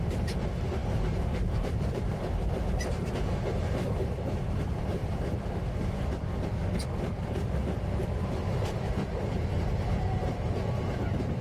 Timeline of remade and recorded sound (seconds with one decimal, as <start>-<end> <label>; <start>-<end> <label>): 0.0-5.0 remade; 5.0-7.0 recorded; 7.0-11.4 remade